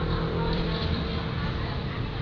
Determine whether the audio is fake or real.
fake